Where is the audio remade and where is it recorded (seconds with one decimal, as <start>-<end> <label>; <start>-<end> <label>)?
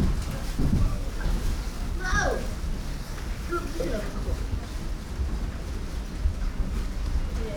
0.0-0.9 recorded; 0.9-2.5 remade; 2.5-2.9 recorded; 2.9-4.6 remade; 4.6-6.3 recorded; 6.3-7.1 remade; 7.1-7.6 recorded